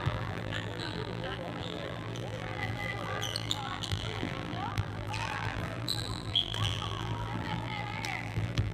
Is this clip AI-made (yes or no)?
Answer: yes